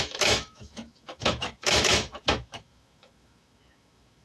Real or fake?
fake